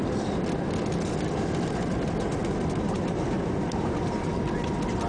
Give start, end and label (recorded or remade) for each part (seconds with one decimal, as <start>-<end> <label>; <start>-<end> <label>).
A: 0.0-2.4 recorded; 2.4-4.3 remade; 4.3-5.1 recorded